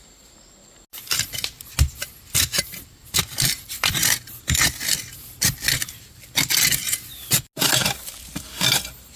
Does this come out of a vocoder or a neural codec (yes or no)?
no